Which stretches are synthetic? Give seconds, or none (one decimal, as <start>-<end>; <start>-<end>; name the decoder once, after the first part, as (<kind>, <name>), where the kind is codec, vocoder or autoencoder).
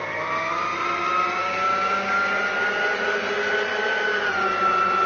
1.4-2.1 (codec, DAC); 3.7-4.3